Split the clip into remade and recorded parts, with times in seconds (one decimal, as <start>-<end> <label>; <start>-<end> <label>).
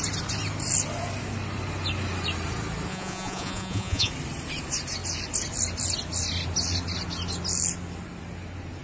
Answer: 0.0-2.9 recorded; 2.9-4.1 remade; 4.1-8.8 recorded